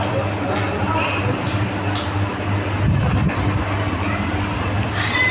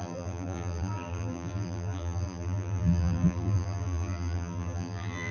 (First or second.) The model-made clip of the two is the second